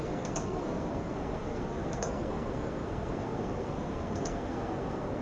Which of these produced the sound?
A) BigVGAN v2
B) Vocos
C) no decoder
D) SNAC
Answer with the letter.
D